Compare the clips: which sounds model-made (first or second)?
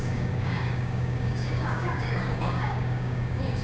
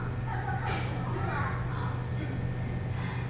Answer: first